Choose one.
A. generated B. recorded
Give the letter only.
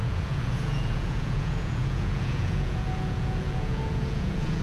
A